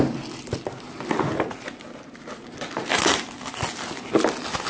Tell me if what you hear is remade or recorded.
recorded